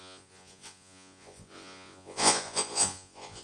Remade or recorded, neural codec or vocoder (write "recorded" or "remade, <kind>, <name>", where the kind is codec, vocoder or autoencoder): remade, vocoder, Vocos